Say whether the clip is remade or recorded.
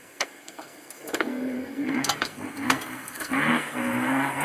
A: remade